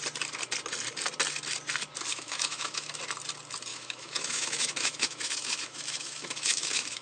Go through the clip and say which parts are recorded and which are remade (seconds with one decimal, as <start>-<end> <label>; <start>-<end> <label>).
0.0-2.1 recorded; 2.1-3.0 remade; 3.0-3.7 recorded; 3.7-7.0 remade